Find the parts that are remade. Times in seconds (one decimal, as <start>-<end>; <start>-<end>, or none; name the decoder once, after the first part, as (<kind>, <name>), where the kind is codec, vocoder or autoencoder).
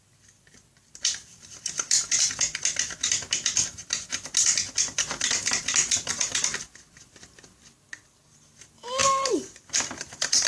1.3-2.2 (vocoder, BigVGAN v2); 9.0-9.6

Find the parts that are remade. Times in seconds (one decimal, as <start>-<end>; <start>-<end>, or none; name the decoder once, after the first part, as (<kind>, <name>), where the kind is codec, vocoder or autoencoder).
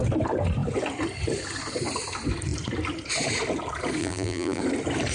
4.0-4.6 (vocoder, BigVGAN v2)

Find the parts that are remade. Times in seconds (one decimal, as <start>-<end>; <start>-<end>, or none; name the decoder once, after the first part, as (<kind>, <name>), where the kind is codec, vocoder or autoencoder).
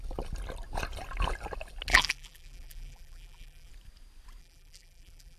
1.9-3.7 (vocoder, BigVGAN v2); 4.4-5.4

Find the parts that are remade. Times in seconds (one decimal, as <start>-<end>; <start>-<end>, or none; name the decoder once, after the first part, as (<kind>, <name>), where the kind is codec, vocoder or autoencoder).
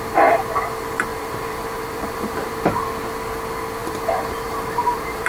1.1-2.5 (vocoder, BigVGAN v2); 3.8-5.3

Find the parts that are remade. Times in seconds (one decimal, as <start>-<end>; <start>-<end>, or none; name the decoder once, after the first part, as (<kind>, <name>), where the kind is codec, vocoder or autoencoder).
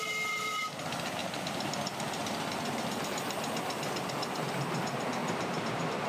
5.2-6.1 (vocoder, BigVGAN v2)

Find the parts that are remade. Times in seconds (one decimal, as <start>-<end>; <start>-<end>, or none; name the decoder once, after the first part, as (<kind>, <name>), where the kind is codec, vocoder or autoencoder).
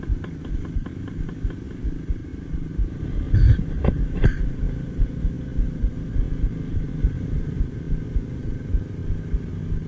2.2-3.0 (vocoder, BigVGAN v2); 7.0-7.6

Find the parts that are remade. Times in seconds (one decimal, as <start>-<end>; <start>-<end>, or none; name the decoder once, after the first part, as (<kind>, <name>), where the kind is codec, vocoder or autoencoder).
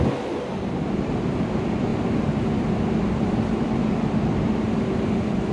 1.9-5.5 (vocoder, BigVGAN v2)